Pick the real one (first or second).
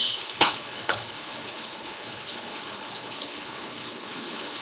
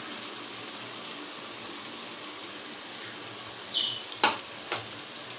second